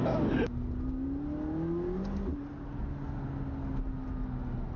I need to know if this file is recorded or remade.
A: recorded